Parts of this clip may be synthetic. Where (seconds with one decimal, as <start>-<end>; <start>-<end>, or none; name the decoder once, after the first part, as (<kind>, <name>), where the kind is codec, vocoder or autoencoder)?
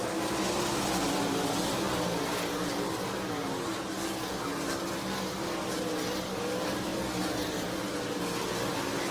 none